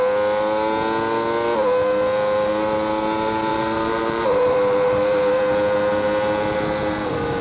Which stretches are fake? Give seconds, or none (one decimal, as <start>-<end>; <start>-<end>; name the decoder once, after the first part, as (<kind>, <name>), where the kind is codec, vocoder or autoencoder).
3.5-5.4 (vocoder, BigVGAN v2)